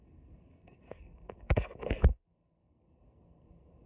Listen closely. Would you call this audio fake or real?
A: fake